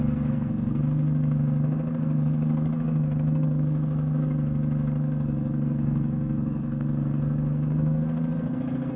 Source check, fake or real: fake